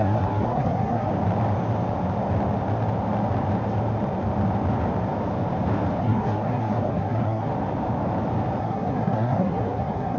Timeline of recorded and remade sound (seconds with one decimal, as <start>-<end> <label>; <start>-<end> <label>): 0.0-1.1 remade; 1.1-6.0 recorded; 6.0-7.5 remade; 7.5-8.6 recorded; 8.6-10.2 remade